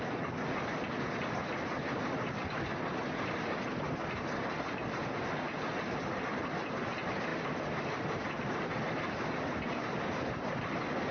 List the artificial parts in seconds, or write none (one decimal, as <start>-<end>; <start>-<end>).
none